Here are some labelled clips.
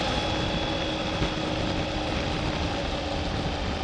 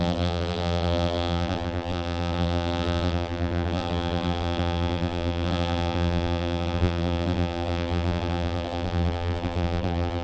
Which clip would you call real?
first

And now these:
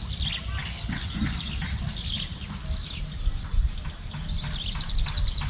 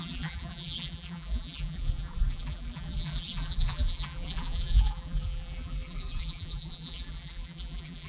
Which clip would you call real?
first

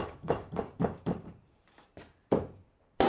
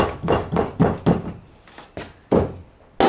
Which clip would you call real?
second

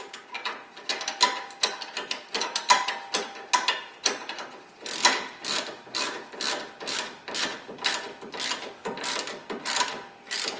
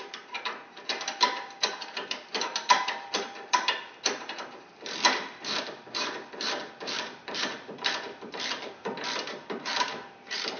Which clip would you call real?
first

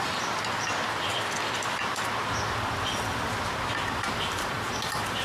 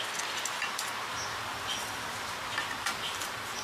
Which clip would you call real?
second